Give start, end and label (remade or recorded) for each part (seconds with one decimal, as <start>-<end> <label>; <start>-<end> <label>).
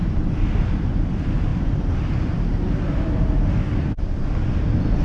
0.0-5.0 recorded